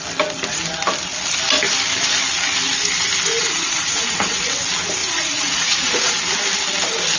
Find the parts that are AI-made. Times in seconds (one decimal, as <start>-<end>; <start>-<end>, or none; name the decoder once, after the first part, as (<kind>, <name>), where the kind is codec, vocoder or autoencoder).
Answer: 3.4-4.4 (vocoder, Vocos); 5.0-6.1